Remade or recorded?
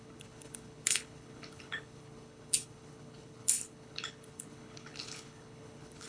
remade